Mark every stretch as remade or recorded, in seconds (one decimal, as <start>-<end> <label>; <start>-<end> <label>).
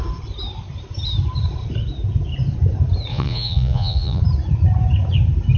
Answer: 0.0-3.1 recorded; 3.1-4.2 remade; 4.2-5.6 recorded